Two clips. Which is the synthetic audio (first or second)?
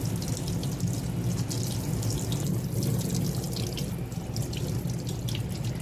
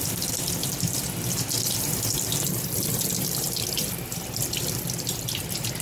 second